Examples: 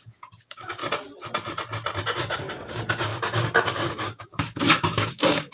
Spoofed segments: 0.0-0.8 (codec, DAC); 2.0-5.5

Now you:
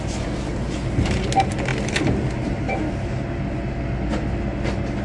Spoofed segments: 0.5-1.2 (vocoder, BigVGAN v2)

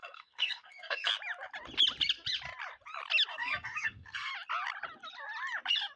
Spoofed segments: 0.0-1.1 (codec, SNAC); 3.3-4.3

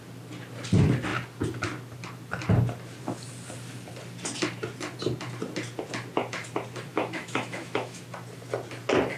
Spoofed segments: 6.9-8.0 (autoencoder, DAC-VAE)

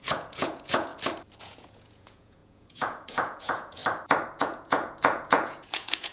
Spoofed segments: 0.0-0.9 (vocoder, Vocos); 1.4-3.8; 4.4-6.1

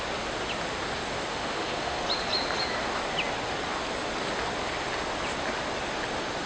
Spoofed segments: 1.3-2.0 (autoencoder, DAC-VAE)

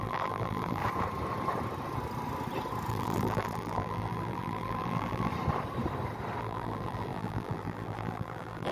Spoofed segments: 0.0-0.8 (vocoder, BigVGAN v2); 2.9-5.3; 6.4-8.7

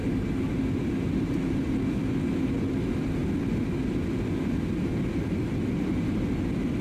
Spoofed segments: none